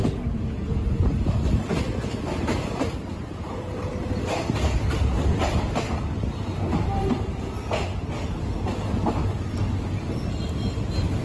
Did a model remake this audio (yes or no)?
no